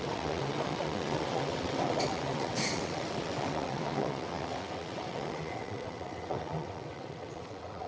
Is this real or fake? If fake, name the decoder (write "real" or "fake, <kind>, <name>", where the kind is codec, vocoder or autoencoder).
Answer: fake, vocoder, WaveNeXt